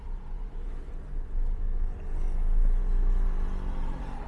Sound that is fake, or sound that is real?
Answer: real